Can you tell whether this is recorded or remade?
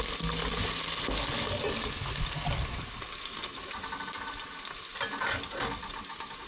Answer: recorded